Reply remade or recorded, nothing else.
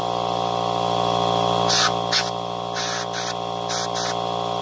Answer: recorded